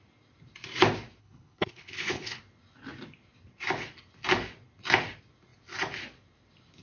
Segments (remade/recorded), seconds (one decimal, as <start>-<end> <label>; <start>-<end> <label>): 0.0-1.2 recorded; 1.2-2.4 remade; 2.4-6.8 recorded